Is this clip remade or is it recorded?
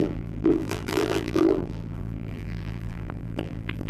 remade